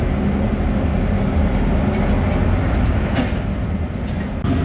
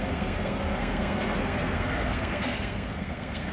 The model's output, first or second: second